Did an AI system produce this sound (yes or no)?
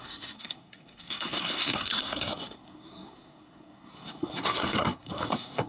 yes